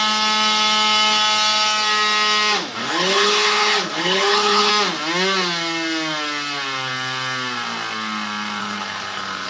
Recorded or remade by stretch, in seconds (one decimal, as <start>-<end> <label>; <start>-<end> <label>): 0.0-2.8 recorded; 2.8-4.7 remade; 4.7-8.6 recorded; 8.6-9.5 remade